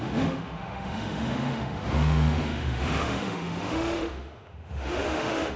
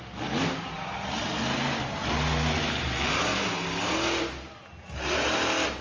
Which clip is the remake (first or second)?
first